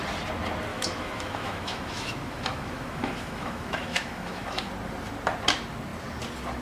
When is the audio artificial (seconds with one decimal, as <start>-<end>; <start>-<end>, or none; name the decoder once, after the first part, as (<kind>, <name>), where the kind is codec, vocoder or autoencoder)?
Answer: 0.7-4.7 (autoencoder, DAC-VAE)